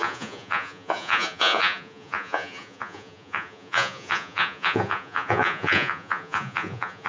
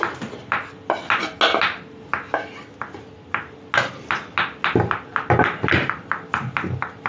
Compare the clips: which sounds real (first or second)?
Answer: second